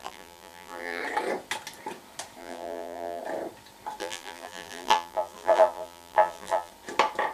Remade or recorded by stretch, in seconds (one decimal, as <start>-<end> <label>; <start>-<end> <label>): 0.0-1.0 remade; 1.0-2.4 recorded; 2.4-3.2 remade; 3.2-4.0 recorded; 4.0-6.7 remade; 6.7-7.3 recorded